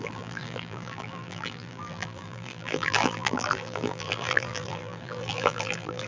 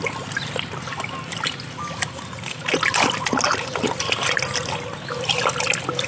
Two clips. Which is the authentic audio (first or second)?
second